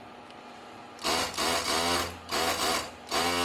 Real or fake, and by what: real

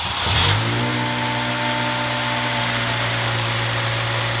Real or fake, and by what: real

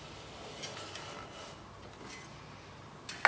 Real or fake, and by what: real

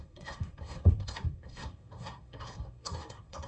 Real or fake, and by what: fake, codec, SNAC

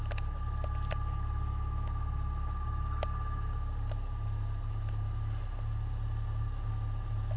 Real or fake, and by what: real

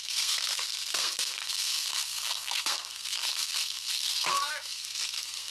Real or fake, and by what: fake, codec, SNAC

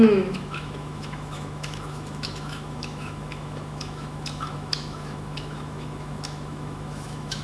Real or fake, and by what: fake, autoencoder, DAC-VAE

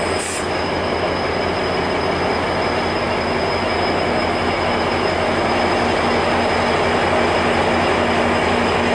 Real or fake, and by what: real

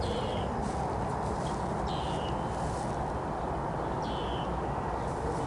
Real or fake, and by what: real